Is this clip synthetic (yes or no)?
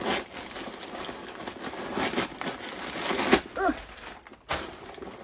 no